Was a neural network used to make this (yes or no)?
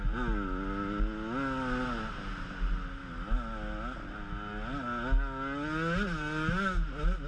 no